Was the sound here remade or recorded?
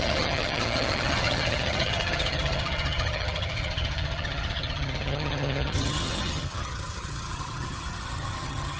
remade